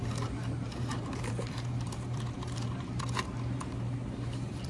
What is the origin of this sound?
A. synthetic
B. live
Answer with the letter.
A